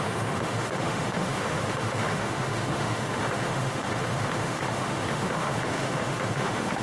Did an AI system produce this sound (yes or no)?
yes